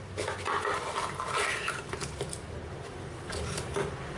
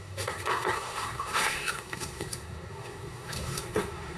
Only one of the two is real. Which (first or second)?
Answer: first